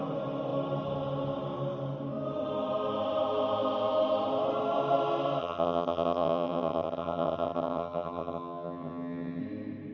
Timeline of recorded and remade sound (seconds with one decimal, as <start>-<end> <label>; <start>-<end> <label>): 0.0-5.4 recorded; 5.4-9.4 remade; 9.4-9.9 recorded